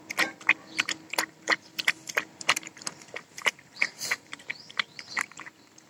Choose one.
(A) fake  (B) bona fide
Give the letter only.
A